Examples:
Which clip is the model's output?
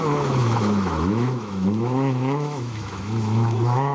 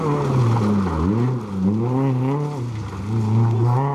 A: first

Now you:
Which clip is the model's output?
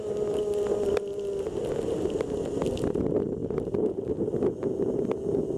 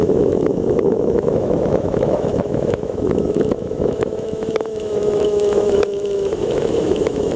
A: second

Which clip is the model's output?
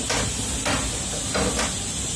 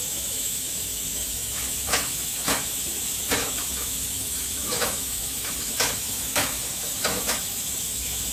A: second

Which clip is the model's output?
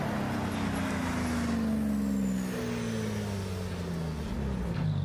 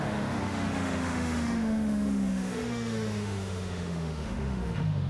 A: second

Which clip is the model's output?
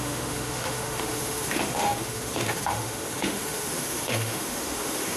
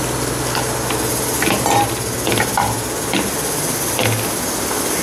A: first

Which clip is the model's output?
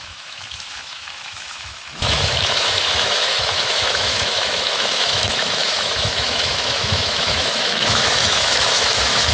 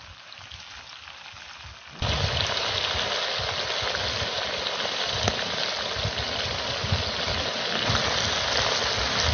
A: first